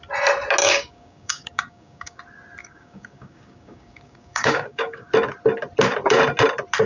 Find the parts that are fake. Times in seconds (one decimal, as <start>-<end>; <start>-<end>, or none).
0.6-2.2; 2.6-5.1